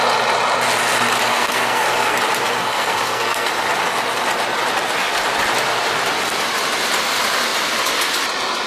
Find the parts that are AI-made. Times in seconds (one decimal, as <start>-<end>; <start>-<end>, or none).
1.3-2.2; 2.6-3.5